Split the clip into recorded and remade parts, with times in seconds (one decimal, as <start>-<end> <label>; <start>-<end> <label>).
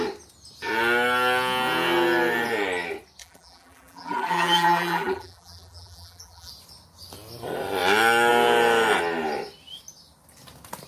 0.0-3.2 recorded; 3.2-6.5 remade; 6.5-10.9 recorded